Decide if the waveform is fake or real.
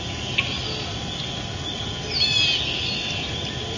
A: real